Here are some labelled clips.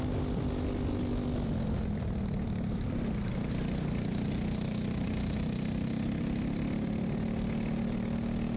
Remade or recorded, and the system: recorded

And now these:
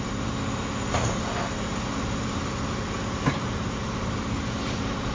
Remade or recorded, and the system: recorded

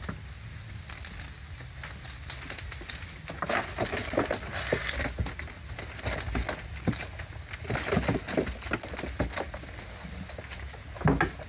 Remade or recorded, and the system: recorded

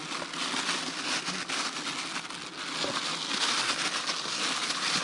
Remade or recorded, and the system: recorded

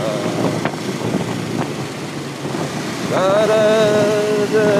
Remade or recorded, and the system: recorded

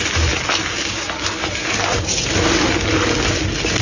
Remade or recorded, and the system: recorded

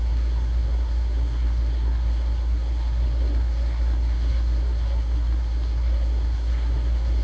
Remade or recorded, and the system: remade, codec, SNAC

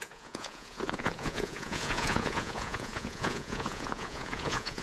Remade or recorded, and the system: remade, vocoder, Vocos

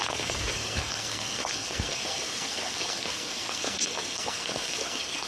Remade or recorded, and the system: remade, codec, SNAC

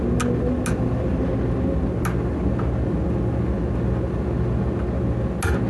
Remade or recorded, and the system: recorded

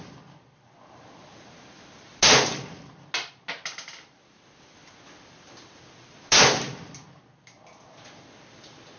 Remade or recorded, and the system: recorded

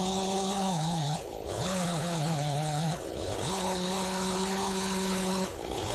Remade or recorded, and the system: remade, codec, HILCodec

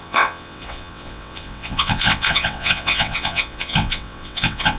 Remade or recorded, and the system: remade, vocoder, WaveNeXt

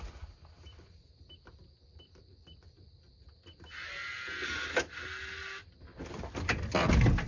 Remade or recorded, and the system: recorded